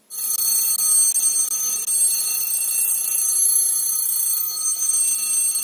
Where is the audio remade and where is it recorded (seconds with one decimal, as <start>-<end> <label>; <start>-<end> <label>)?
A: 0.0-4.4 recorded; 4.4-4.9 remade; 4.9-5.6 recorded